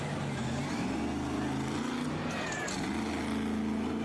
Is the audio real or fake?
real